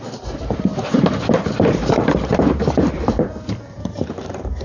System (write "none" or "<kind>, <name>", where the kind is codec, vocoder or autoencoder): vocoder, BigVGAN v2